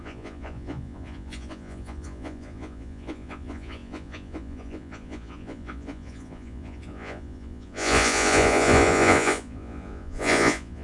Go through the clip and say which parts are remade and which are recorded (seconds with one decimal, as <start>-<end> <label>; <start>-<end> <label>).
0.0-10.8 remade